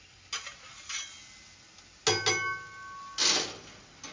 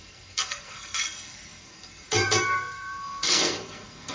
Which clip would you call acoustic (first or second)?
first